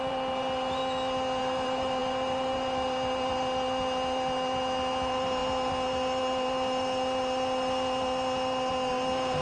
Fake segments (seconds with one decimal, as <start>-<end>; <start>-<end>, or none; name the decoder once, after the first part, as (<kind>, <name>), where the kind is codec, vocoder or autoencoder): 0.0-0.8 (vocoder, BigVGAN v2); 1.4-9.4